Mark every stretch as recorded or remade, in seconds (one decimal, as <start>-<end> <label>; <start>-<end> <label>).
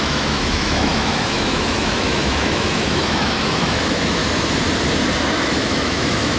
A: 0.0-4.2 remade; 4.2-5.3 recorded; 5.3-6.4 remade